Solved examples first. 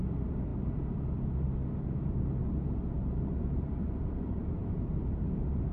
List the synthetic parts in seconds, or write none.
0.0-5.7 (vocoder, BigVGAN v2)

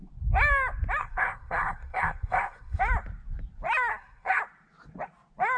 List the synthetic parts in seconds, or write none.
1.0-2.8 (codec, SNAC); 3.9-4.4

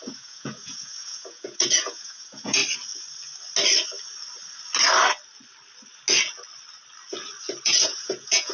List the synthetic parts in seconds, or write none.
0.0-2.6 (vocoder, Vocos); 7.6-8.5

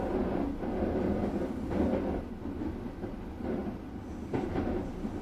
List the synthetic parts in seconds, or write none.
none

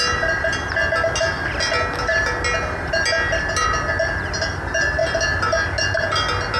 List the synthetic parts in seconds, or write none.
none

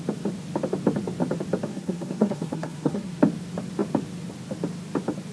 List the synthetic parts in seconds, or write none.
1.7-3.2 (codec, SNAC)

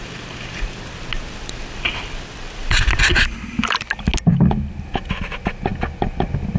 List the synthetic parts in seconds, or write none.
none